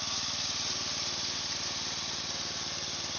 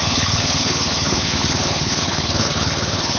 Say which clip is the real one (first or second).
first